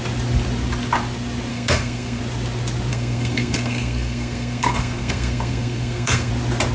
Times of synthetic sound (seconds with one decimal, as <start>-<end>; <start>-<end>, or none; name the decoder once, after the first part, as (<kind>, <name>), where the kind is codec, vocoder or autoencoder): 1.5-2.2 (codec, SNAC); 2.9-6.3